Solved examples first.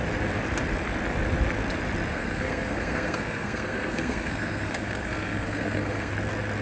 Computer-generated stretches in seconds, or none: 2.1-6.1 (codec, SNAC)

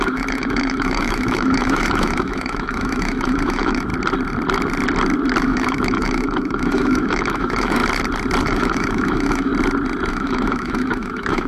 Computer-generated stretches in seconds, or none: 0.0-3.9 (autoencoder, DAC-VAE); 5.4-7.8; 8.4-9.5; 10.1-11.5